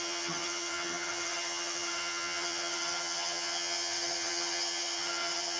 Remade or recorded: remade